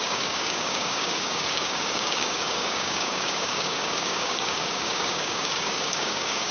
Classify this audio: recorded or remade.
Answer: remade